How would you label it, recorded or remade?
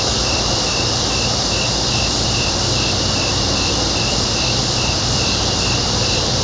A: remade